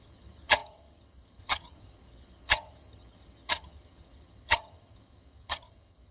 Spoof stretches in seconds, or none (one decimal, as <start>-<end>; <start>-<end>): 0.0-6.1